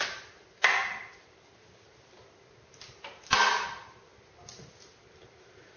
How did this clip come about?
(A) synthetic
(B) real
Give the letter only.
B